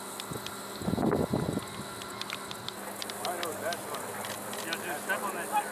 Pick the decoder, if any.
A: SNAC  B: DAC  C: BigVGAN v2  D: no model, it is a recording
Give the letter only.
D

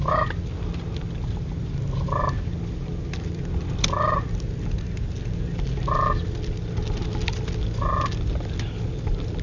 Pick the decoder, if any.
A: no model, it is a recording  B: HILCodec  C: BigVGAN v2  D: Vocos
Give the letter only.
A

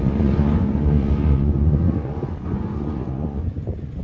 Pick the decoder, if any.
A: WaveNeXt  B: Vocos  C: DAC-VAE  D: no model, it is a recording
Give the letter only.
B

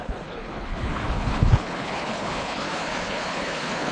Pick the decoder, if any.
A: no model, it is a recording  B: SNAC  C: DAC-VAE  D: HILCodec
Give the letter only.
D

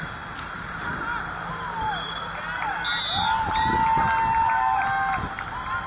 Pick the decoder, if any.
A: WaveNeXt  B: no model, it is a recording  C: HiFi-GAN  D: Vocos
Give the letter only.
B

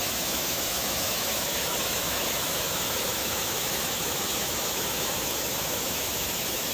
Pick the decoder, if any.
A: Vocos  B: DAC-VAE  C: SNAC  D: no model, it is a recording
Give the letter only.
B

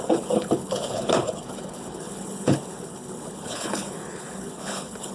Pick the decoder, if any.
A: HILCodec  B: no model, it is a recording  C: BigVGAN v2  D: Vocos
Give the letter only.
A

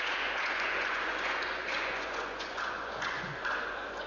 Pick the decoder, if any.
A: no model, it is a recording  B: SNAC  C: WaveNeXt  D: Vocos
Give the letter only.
D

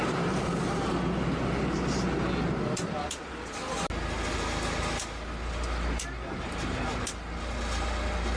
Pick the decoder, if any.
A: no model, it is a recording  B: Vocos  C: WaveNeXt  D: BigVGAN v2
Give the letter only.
A